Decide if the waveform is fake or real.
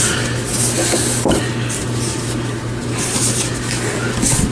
real